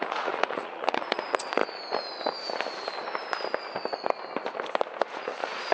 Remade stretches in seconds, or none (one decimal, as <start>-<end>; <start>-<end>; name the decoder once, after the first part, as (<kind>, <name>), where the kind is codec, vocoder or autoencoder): 0.0-1.6 (vocoder, Vocos); 5.0-5.7